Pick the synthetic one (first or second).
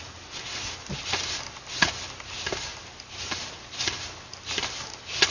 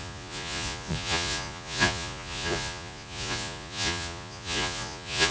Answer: second